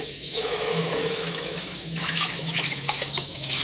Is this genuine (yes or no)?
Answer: no